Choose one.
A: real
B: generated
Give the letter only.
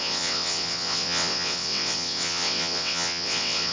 B